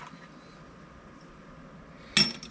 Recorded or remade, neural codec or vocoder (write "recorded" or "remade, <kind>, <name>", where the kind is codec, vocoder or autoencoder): recorded